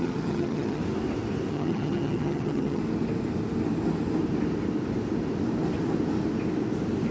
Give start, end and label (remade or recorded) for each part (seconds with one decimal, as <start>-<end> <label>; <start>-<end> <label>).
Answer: 0.0-0.8 remade; 0.8-1.5 recorded; 1.5-2.8 remade; 2.8-7.1 recorded